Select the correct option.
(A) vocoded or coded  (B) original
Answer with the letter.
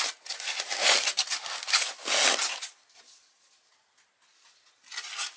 B